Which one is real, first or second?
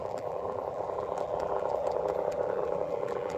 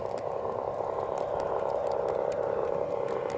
second